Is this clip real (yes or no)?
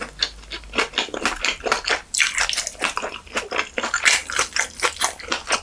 yes